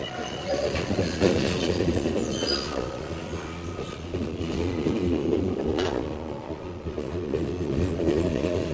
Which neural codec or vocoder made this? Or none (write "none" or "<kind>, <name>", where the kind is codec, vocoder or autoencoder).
vocoder, Vocos